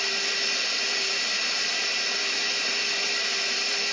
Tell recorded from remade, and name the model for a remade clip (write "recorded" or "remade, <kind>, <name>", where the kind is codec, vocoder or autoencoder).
remade, vocoder, BigVGAN v2